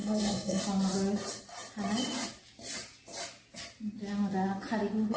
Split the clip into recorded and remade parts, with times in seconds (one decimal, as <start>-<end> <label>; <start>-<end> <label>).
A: 0.0-0.6 remade; 0.6-5.2 recorded